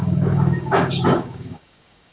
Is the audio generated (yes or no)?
yes